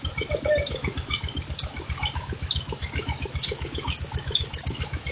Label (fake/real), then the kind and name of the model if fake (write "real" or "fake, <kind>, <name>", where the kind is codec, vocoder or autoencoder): fake, autoencoder, DAC-VAE